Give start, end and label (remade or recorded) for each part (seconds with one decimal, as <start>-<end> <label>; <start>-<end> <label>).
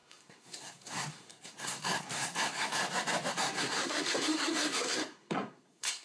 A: 0.0-2.8 remade; 2.8-3.3 recorded; 3.3-6.0 remade